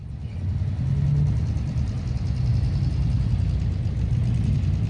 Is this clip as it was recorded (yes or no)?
yes